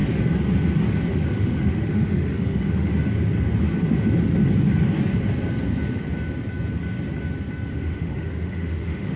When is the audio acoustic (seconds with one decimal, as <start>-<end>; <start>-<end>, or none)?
0.0-1.1; 2.9-7.7